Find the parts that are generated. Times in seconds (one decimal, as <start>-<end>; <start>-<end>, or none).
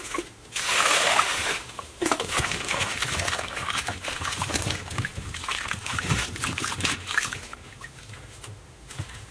0.0-9.3